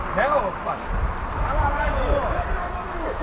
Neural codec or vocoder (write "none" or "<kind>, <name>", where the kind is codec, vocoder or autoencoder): none